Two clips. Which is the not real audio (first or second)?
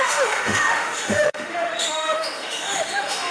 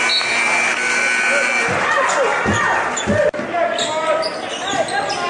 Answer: first